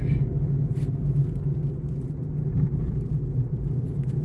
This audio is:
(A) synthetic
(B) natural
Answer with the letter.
B